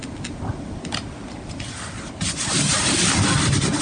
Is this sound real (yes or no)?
yes